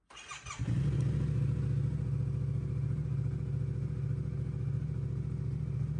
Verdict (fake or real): real